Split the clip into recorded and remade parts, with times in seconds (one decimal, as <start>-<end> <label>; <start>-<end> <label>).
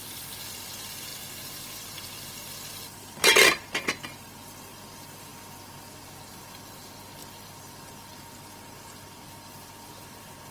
0.0-5.3 remade; 5.3-6.4 recorded; 6.4-10.5 remade